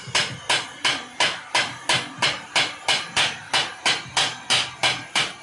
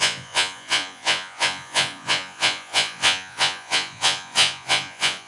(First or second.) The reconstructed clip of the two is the second